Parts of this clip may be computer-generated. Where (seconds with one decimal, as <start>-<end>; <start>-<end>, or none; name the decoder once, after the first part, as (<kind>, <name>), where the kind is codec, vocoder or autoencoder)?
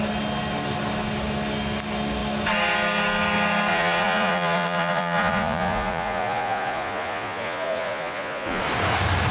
3.7-8.6 (vocoder, Vocos)